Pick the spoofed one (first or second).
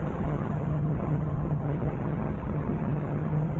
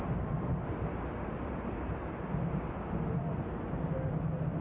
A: first